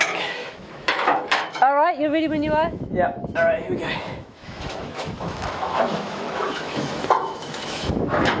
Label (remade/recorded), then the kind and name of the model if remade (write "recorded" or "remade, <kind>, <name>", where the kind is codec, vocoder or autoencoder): remade, autoencoder, DAC-VAE